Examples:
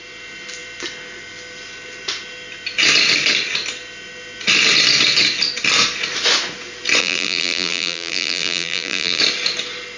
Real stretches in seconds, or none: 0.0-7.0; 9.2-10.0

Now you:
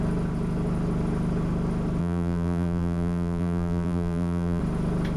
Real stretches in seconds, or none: 0.0-2.0; 4.6-5.2

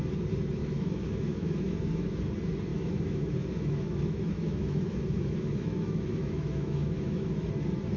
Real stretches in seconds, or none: 0.0-0.6; 2.2-2.7; 7.5-8.0